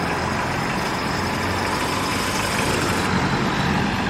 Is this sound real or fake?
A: real